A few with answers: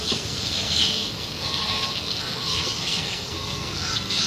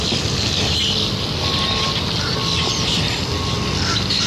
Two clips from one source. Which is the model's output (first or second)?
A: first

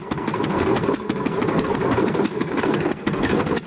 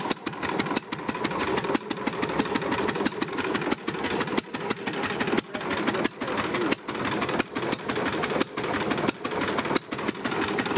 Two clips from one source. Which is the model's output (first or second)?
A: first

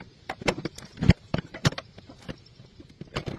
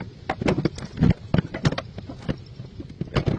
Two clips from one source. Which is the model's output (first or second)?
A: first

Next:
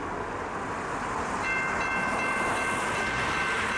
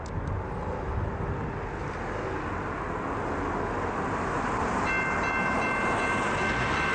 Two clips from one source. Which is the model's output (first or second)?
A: first